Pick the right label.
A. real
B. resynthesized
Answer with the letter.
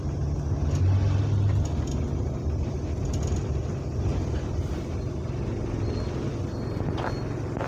A